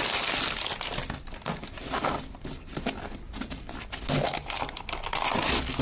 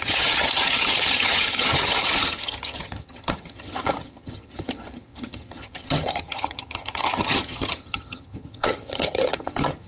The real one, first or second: first